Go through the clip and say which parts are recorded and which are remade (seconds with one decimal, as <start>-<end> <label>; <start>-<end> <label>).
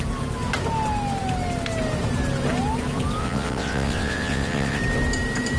0.0-3.2 recorded; 3.2-4.8 remade; 4.8-5.6 recorded